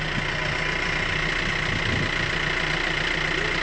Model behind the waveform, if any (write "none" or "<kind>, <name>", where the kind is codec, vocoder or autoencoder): none